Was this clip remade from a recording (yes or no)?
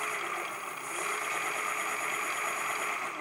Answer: no